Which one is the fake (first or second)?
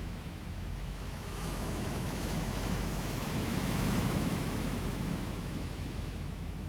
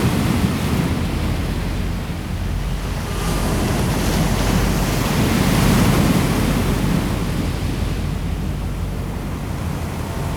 first